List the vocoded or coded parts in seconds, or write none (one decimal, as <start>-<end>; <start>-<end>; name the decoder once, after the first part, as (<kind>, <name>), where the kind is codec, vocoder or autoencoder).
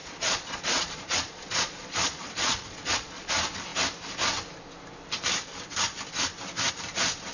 0.0-3.3 (vocoder, Vocos)